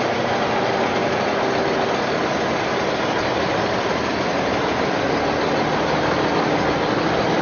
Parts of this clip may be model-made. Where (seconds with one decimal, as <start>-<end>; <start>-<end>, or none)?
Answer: none

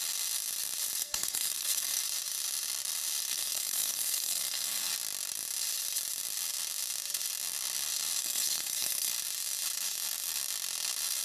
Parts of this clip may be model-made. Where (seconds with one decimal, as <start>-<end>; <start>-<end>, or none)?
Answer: 1.0-2.0; 3.3-4.9; 8.2-9.1

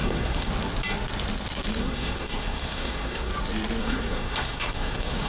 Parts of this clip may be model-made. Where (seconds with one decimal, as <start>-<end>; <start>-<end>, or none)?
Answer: 0.0-0.5; 1.8-3.3; 3.8-5.3